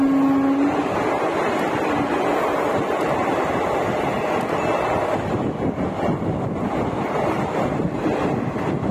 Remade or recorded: recorded